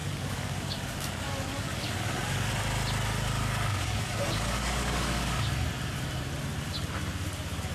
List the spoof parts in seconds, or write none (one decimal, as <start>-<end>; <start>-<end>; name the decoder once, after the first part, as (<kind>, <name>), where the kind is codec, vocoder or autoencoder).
0.0-2.5 (codec, DAC); 3.4-5.5